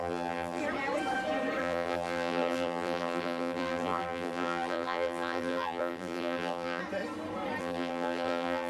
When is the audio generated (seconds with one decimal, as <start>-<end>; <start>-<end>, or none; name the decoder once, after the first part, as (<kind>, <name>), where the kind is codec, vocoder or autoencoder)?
0.0-0.6 (vocoder, BigVGAN v2); 1.6-6.8; 7.6-8.7